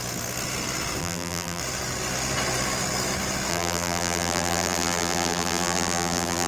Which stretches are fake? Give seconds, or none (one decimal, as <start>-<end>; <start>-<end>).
1.0-1.6; 3.5-6.5